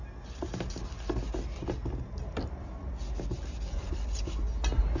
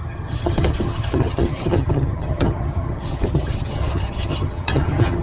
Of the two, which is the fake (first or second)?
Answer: second